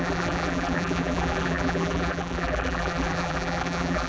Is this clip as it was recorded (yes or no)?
no